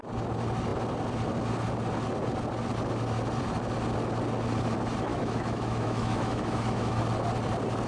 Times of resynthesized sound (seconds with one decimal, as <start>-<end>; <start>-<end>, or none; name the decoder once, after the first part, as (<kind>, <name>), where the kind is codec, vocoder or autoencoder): 5.1-7.0 (autoencoder, DAC-VAE)